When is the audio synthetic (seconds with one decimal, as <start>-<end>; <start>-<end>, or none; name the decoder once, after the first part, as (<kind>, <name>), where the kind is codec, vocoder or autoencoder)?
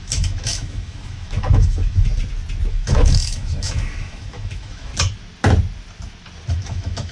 0.0-2.1 (autoencoder, DAC-VAE); 2.7-4.9; 6.5-7.1